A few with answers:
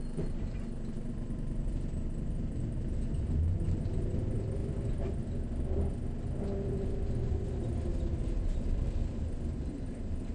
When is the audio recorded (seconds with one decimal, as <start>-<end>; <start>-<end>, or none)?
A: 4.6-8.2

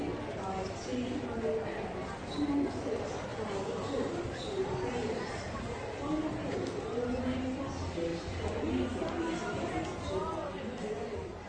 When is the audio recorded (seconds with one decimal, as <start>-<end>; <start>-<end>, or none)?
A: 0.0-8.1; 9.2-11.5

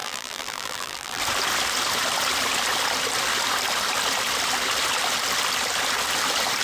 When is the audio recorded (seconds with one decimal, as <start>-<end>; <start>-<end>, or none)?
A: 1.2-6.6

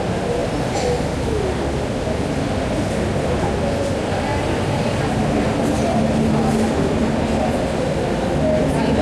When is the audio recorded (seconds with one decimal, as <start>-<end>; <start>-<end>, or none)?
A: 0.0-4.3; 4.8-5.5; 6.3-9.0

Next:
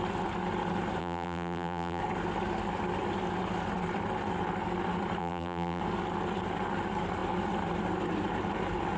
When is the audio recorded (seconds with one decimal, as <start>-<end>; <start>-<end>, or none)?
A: 0.0-1.0; 2.0-5.2; 5.8-9.0